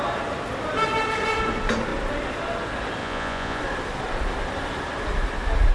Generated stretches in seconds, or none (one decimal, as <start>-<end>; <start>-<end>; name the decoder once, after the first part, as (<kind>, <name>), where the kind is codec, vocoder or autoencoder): 3.0-3.6 (vocoder, Vocos)